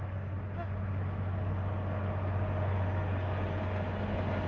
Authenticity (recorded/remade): recorded